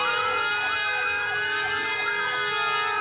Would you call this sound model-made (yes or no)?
yes